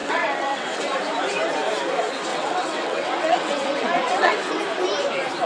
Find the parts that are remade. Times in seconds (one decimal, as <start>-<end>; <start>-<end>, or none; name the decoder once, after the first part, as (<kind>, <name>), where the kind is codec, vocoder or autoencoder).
0.0-0.8 (vocoder, WaveNeXt); 2.3-4.6